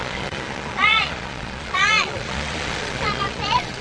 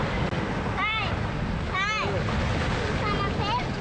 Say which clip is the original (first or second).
second